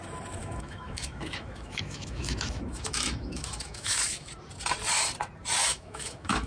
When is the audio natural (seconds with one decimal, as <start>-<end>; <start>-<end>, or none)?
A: 0.0-0.4; 4.3-5.6